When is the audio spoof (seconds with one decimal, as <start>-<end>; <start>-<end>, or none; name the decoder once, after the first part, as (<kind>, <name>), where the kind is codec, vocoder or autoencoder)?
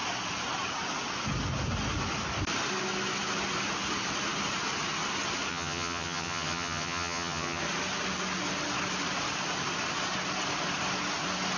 5.5-7.6 (vocoder, HiFi-GAN)